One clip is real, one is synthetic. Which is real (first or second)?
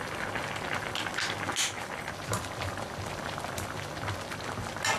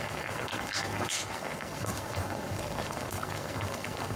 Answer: first